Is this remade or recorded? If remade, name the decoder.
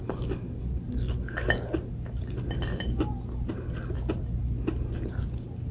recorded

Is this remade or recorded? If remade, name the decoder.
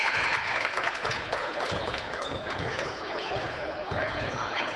remade, codec, HILCodec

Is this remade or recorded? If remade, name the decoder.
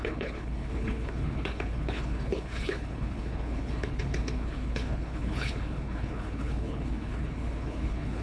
remade, codec, HILCodec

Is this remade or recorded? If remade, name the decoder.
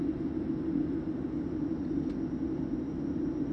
recorded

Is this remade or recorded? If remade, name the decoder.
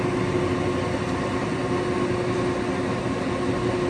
recorded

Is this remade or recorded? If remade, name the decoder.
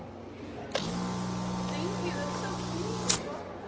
recorded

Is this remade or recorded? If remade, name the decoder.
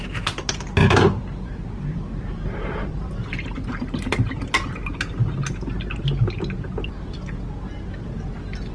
recorded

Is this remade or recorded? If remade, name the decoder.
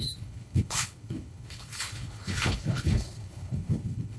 remade, codec, HILCodec